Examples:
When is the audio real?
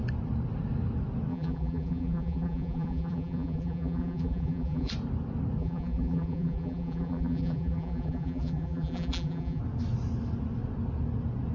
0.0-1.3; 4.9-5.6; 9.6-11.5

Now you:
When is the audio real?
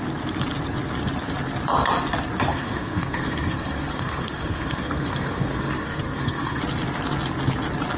0.0-2.5; 6.6-8.0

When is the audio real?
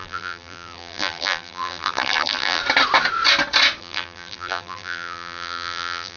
2.6-3.8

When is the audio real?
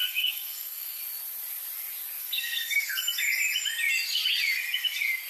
1.0-2.2; 3.0-5.3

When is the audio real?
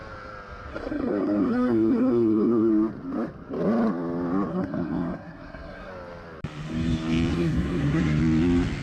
0.0-0.7; 2.7-4.5; 5.9-7.3; 8.2-8.8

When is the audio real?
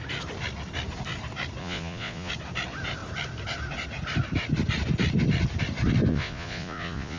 0.0-1.6; 2.3-6.1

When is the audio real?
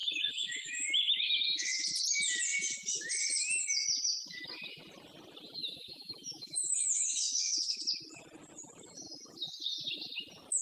1.8-5.6; 7.8-10.6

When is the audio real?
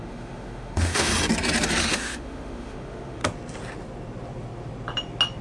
1.1-1.9; 3.2-5.4